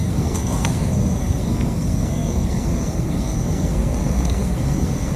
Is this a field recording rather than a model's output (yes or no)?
no